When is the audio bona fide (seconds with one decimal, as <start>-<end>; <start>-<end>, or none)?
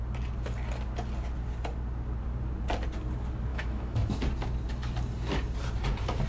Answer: 0.0-3.5; 4.2-6.3